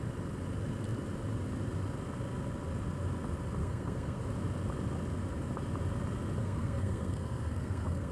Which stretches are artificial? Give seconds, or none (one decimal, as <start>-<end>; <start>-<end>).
3.6-4.2; 6.4-8.1